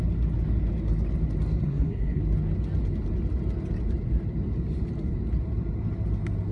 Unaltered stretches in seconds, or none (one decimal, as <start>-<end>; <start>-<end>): 0.0-1.6; 2.2-6.5